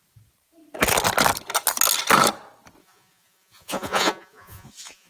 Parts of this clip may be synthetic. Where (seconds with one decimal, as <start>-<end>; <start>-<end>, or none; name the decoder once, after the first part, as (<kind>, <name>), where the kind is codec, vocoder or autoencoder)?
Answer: 2.8-5.1 (vocoder, Vocos)